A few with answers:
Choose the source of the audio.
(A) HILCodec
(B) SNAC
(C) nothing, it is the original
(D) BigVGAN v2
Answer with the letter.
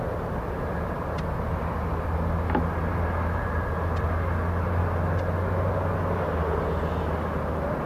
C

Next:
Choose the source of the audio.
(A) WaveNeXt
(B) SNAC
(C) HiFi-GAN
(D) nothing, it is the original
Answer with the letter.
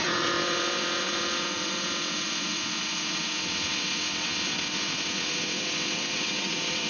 A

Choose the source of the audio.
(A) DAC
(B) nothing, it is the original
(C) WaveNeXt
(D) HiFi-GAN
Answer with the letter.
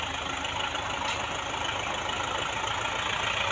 B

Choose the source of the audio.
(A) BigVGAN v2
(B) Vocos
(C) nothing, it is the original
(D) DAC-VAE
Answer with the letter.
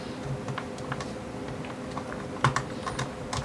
C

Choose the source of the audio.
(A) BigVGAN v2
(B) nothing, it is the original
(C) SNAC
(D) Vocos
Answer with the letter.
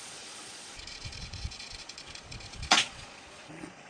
D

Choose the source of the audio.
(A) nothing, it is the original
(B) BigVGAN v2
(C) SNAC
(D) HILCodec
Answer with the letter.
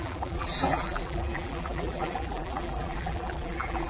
B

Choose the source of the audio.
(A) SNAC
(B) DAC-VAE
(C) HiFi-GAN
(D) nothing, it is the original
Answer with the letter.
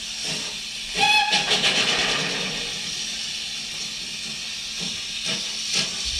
D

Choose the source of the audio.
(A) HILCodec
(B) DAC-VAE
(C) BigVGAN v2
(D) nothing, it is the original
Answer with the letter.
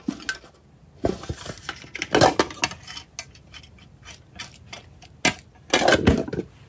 D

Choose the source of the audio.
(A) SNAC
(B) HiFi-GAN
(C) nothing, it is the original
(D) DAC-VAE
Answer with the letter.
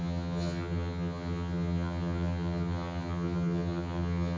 B